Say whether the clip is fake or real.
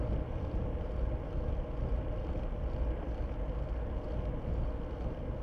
real